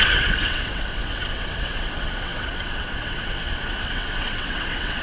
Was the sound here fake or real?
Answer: fake